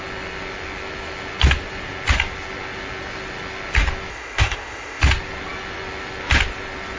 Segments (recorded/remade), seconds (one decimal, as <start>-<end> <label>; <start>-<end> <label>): 0.0-4.1 recorded; 4.1-5.0 remade; 5.0-7.0 recorded